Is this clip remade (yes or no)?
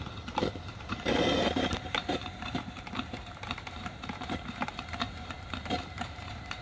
yes